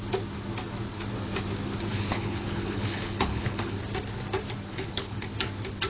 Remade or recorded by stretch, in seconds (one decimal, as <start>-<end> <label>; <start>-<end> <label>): 0.0-1.9 recorded; 1.9-3.8 remade; 3.8-4.7 recorded; 4.7-5.3 remade; 5.3-5.9 recorded